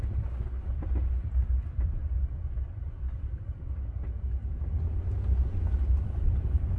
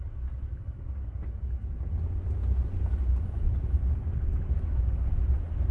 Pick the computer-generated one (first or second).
first